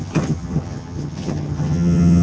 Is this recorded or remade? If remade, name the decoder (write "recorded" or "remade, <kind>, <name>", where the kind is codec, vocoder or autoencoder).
remade, vocoder, HiFi-GAN